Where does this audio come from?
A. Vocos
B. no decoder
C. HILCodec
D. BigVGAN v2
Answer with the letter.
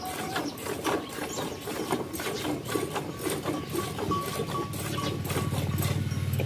B